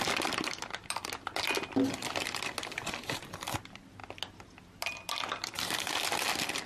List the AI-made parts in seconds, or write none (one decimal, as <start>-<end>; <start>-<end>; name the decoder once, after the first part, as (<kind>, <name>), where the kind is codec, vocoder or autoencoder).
none